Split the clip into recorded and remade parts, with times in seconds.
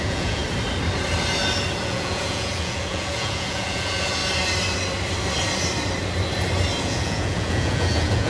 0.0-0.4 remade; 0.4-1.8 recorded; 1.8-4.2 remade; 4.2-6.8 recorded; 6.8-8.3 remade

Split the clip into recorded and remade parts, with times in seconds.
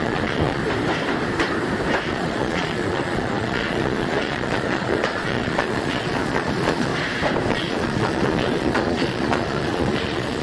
0.0-0.6 remade; 0.6-2.0 recorded; 2.0-6.9 remade; 6.9-7.5 recorded; 7.5-10.4 remade